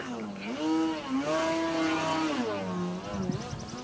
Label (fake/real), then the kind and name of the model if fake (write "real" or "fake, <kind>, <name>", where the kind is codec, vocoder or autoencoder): real